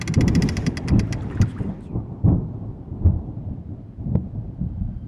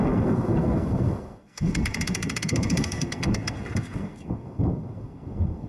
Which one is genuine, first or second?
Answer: first